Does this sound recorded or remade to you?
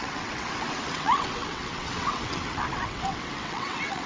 remade